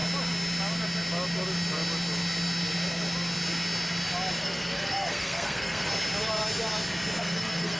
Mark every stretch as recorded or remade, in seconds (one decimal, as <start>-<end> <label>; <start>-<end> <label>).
0.0-4.4 recorded; 4.4-5.9 remade; 5.9-7.2 recorded; 7.2-7.8 remade